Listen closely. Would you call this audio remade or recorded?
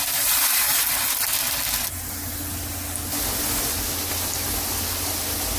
recorded